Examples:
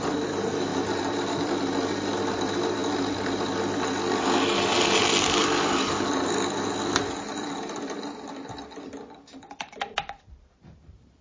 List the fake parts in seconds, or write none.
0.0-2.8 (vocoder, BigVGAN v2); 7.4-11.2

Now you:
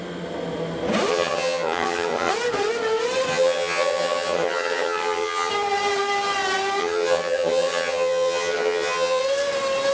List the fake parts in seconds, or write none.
1.1-2.3 (vocoder, HiFi-GAN); 3.3-5.5; 6.8-9.2

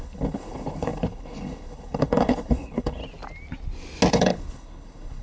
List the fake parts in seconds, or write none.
0.0-3.0 (codec, HILCodec); 4.1-5.2